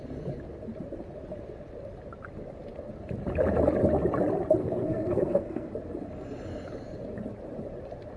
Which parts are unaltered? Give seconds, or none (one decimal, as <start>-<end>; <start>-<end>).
0.0-4.6; 5.7-8.2